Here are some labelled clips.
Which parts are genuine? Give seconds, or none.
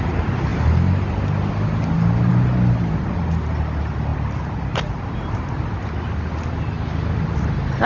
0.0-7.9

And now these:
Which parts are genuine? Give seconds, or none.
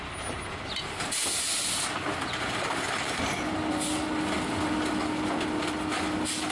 0.0-6.5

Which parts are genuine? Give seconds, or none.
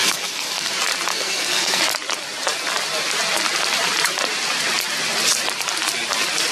0.7-1.1; 1.8-6.5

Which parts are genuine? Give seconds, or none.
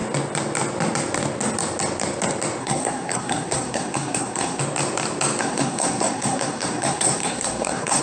0.0-2.6; 4.6-5.4